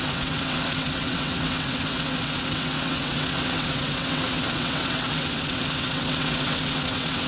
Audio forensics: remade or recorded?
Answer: remade